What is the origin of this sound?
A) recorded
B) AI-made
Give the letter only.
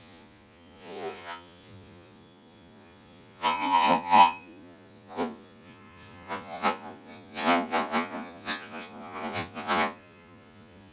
B